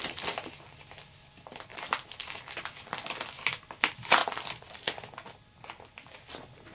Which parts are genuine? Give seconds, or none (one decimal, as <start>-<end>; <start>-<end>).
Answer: 0.0-1.7; 2.4-6.7